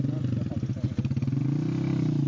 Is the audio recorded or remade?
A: recorded